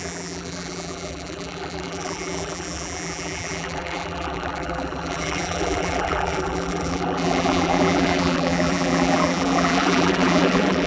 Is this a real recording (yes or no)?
no